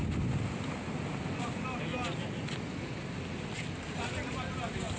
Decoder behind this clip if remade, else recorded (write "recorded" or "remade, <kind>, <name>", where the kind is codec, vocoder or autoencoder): recorded